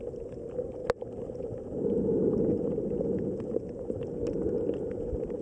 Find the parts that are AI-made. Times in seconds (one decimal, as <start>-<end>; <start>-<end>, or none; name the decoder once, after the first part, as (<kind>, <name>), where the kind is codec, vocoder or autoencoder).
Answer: none